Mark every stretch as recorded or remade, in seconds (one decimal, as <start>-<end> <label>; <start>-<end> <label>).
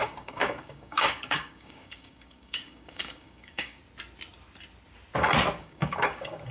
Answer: 0.0-3.8 remade; 3.8-5.6 recorded; 5.6-6.5 remade